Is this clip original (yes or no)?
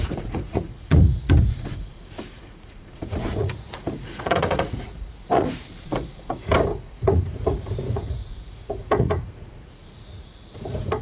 no